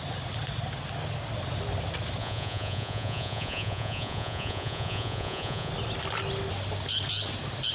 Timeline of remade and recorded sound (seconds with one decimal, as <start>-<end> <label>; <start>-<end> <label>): 0.0-2.2 recorded; 2.2-5.7 remade; 5.7-7.7 recorded